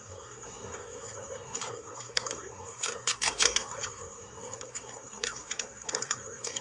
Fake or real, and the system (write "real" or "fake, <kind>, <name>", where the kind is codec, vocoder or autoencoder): fake, codec, SNAC